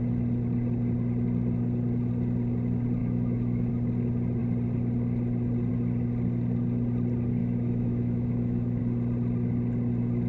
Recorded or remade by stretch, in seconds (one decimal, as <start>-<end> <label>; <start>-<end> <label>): 0.0-3.0 recorded; 3.0-3.7 remade; 3.7-7.4 recorded; 7.4-8.8 remade; 8.8-10.3 recorded